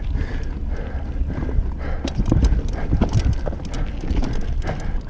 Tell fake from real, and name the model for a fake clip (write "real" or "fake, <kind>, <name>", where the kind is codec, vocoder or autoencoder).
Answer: real